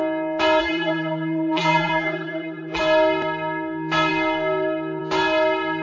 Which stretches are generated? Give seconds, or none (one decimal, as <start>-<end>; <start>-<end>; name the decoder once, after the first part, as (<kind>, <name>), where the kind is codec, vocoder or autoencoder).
0.6-2.8 (vocoder, BigVGAN v2)